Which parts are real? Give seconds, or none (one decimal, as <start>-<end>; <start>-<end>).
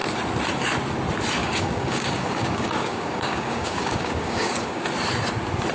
0.0-1.4; 4.8-5.7